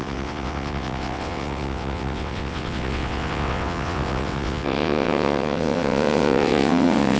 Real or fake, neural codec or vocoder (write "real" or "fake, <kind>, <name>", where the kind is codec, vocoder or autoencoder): fake, vocoder, WaveNeXt